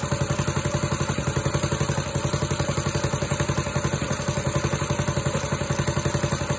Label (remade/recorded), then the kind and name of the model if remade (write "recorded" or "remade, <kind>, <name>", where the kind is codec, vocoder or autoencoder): recorded